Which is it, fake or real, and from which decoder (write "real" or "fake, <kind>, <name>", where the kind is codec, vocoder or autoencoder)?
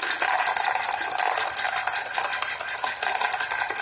real